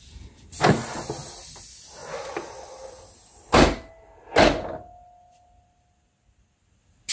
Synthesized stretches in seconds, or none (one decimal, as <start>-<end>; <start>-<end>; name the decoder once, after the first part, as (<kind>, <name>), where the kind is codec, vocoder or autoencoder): none